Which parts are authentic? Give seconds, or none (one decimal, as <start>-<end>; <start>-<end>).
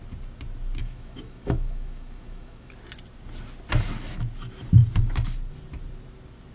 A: 0.0-0.8; 2.7-6.5